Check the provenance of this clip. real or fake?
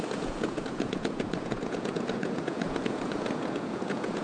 fake